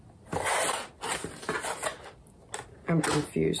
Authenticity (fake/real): real